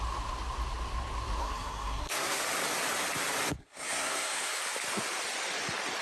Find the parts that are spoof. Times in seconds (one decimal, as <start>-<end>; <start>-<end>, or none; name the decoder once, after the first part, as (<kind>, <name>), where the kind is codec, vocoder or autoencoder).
1.4-2.4 (codec, SNAC); 3.6-4.6